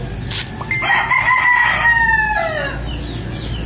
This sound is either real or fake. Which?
real